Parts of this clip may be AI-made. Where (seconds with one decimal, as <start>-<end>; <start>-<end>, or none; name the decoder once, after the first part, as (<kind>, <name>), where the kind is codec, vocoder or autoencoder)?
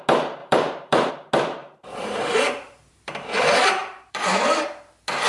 0.4-1.1 (vocoder, BigVGAN v2); 1.6-3.1; 3.8-4.8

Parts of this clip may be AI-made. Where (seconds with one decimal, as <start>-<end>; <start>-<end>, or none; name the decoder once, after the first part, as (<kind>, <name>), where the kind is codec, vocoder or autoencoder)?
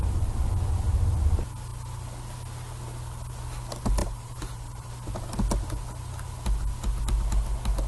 4.0-4.9 (vocoder, BigVGAN v2)